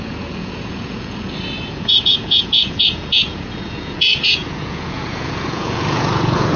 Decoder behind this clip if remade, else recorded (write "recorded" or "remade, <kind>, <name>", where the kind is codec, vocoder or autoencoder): remade, vocoder, Vocos